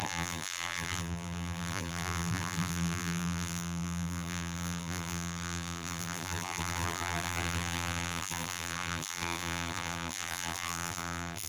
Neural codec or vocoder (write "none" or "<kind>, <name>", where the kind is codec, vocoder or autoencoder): vocoder, BigVGAN v2